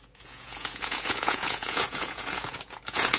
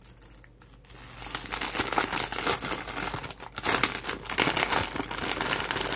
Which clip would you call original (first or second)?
second